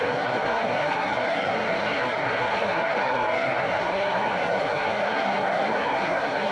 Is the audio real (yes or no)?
no